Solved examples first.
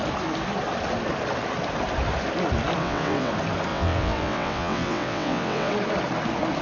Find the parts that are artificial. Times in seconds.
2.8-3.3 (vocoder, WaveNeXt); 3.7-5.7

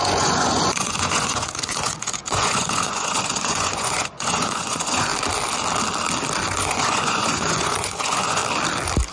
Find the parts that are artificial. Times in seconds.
0.0-5.1 (vocoder, Vocos); 6.6-8.4

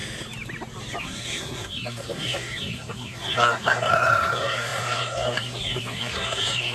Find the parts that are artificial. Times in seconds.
1.0-6.7 (codec, SNAC)

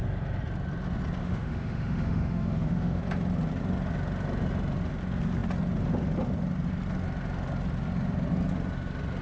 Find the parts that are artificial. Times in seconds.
1.2-3.0 (autoencoder, DAC-VAE)

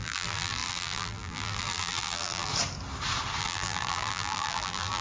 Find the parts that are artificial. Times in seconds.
0.0-2.5 (vocoder, BigVGAN v2); 3.4-5.0

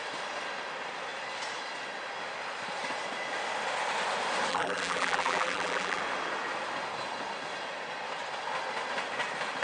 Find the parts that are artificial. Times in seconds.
4.5-6.0 (vocoder, BigVGAN v2)